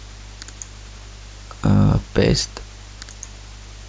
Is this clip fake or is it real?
real